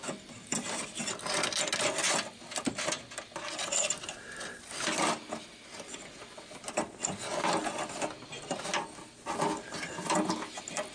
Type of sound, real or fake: real